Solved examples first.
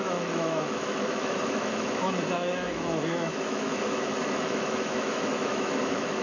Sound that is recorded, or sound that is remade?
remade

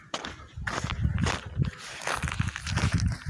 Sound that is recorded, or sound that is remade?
recorded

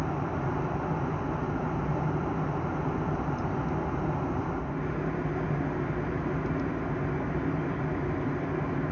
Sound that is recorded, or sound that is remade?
recorded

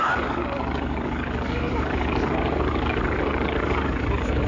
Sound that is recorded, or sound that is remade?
remade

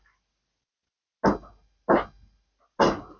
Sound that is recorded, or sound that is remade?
recorded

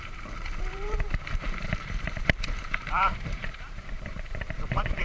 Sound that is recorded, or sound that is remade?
remade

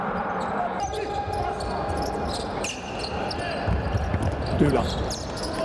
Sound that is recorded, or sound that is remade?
recorded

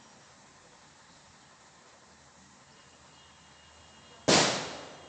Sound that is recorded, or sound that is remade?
recorded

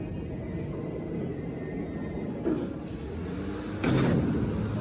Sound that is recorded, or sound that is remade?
recorded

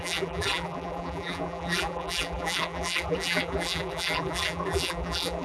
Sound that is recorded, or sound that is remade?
remade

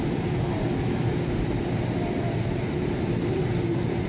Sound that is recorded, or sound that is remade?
remade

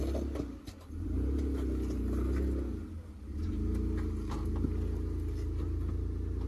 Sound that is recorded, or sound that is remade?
recorded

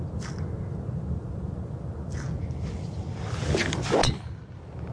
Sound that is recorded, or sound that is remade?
recorded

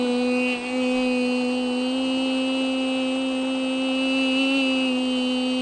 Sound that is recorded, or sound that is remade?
recorded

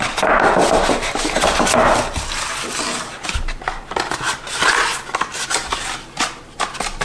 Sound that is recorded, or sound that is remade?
recorded